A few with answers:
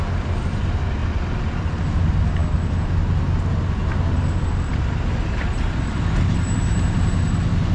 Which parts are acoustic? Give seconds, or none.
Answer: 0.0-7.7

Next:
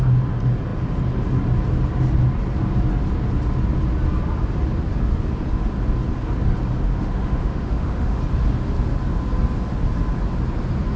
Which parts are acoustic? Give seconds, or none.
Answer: 0.0-6.9; 8.2-11.0

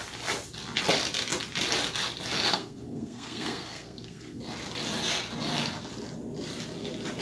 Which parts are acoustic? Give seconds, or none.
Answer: 0.0-2.5; 4.4-7.2

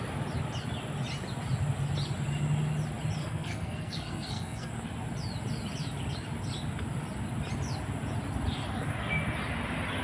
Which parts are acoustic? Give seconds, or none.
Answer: 0.0-3.2; 4.7-10.0

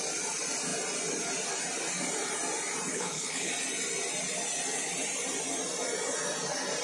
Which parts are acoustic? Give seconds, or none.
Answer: 0.0-2.9; 3.5-6.8